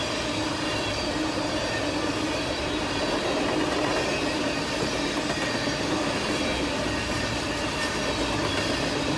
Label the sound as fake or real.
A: real